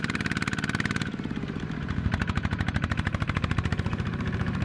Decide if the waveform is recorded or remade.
remade